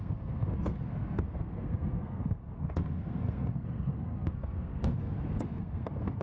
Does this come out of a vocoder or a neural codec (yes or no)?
yes